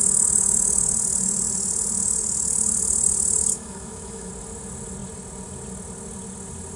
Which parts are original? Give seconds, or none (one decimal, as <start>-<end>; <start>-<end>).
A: 0.0-3.4; 4.3-6.8